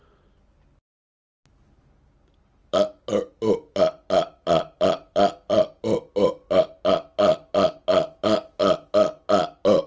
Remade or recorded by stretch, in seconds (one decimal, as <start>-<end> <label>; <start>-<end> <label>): 0.0-2.6 recorded; 2.6-6.1 remade; 6.1-9.9 recorded